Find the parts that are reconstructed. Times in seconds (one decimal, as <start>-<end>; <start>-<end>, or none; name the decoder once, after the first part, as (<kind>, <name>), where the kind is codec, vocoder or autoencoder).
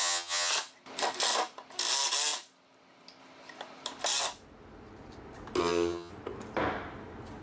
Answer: 0.0-0.5 (vocoder, HiFi-GAN); 5.6-6.1